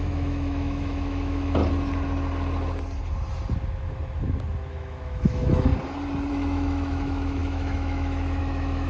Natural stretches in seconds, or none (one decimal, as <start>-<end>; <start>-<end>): 1.6-4.7; 5.7-6.3